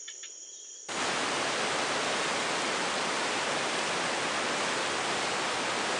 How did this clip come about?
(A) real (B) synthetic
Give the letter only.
A